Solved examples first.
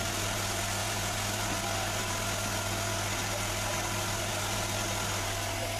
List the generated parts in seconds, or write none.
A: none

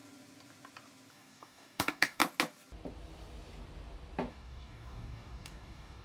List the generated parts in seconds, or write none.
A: 1.1-2.2 (codec, DAC); 4.3-6.0

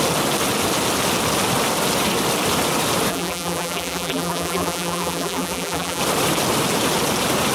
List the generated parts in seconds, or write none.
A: 3.1-6.0 (vocoder, BigVGAN v2)

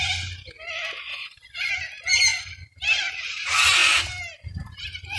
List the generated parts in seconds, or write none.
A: 1.1-1.7 (vocoder, Vocos)

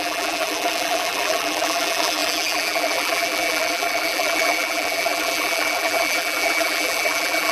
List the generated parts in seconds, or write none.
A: 0.0-7.5 (vocoder, BigVGAN v2)